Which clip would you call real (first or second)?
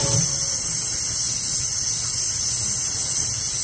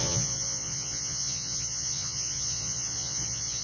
first